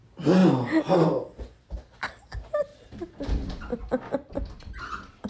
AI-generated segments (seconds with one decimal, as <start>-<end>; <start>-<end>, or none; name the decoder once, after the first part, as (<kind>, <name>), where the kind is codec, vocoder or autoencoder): 0.0-0.4 (vocoder, BigVGAN v2); 1.7-5.3